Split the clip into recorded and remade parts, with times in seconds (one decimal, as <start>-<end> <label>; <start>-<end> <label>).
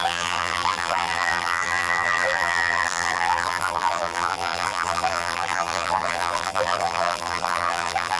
0.0-8.2 remade